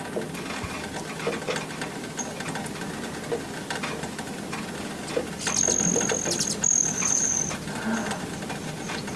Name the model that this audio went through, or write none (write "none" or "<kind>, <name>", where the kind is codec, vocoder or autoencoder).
none